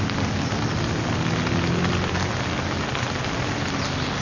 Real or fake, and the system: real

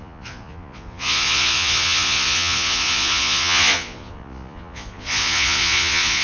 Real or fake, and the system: fake, vocoder, Vocos